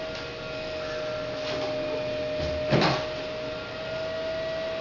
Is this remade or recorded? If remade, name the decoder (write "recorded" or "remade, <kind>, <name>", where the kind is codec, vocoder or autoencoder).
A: recorded